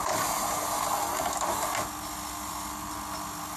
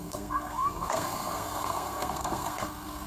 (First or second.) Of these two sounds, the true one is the first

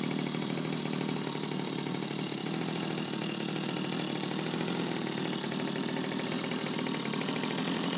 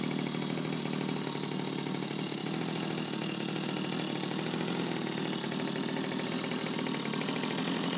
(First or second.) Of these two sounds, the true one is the second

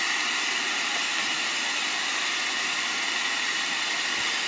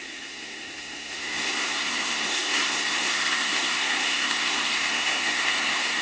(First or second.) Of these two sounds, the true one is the first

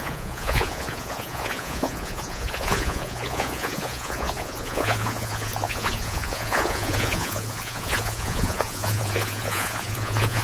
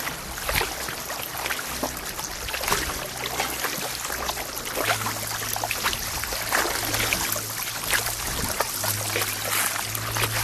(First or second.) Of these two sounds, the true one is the second